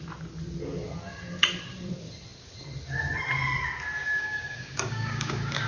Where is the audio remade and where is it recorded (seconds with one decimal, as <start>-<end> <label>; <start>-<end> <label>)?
0.0-4.0 recorded; 4.0-5.7 remade